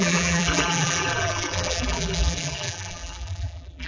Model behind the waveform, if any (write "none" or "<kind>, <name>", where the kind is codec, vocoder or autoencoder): vocoder, BigVGAN v2